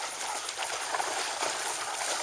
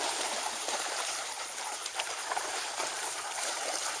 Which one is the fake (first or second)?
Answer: second